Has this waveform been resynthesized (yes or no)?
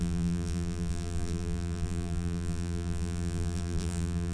yes